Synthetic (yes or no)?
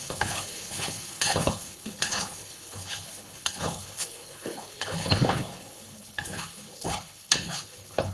yes